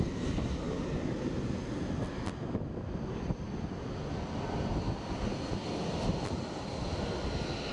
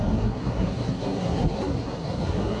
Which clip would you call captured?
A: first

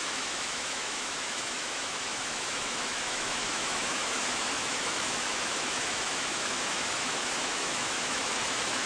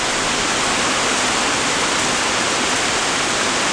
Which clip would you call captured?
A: second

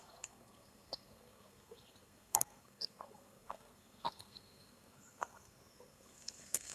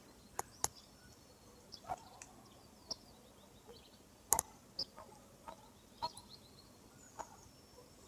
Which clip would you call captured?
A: second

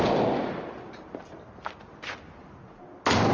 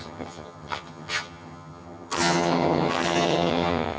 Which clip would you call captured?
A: first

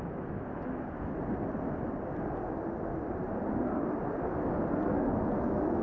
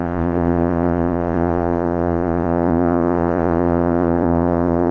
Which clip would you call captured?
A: first